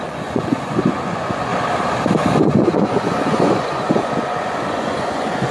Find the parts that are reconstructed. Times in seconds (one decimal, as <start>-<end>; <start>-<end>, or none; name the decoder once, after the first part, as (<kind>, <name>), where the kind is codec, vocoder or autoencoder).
0.0-1.5 (vocoder, Vocos); 2.4-5.5